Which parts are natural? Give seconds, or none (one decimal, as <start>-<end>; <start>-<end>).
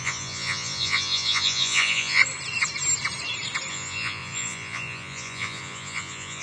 2.2-3.7